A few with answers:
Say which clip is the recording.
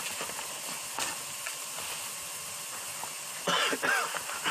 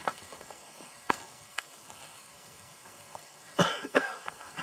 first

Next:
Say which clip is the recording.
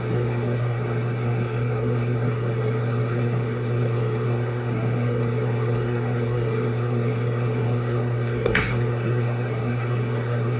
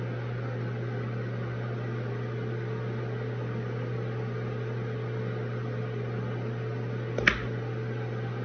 second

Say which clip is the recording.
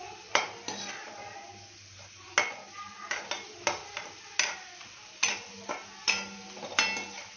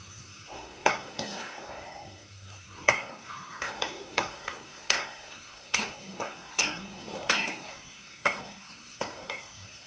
first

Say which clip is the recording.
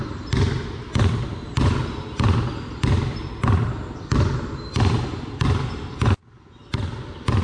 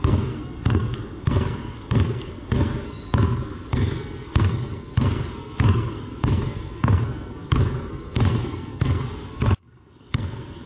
first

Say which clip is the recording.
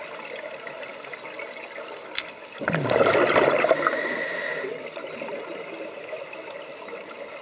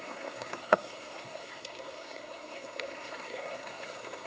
first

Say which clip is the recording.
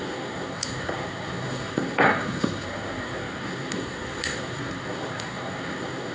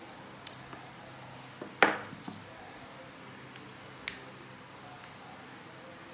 second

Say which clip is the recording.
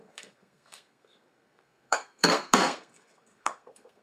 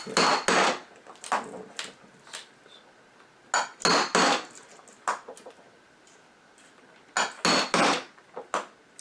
second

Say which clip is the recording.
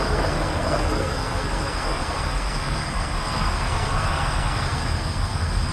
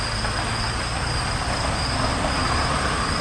second